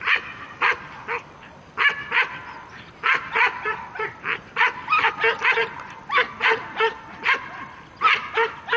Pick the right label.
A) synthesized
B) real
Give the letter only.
B